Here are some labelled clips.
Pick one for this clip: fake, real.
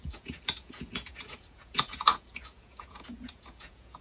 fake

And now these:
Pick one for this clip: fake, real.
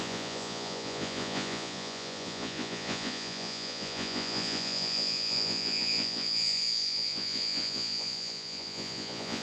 fake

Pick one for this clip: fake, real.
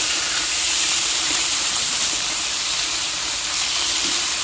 fake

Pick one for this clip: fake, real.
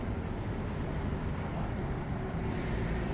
fake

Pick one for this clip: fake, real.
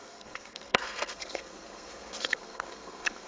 fake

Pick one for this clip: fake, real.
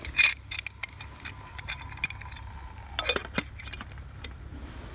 real